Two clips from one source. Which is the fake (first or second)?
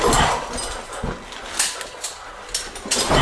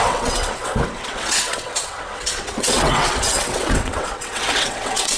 second